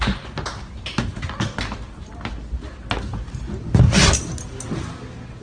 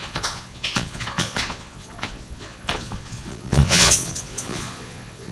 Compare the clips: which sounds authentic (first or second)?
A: first